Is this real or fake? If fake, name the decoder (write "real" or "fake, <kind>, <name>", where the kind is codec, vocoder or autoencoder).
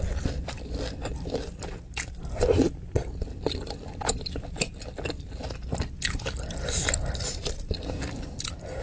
real